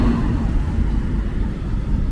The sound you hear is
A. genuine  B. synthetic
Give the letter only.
A